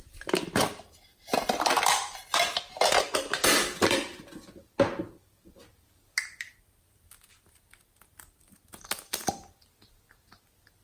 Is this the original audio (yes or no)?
yes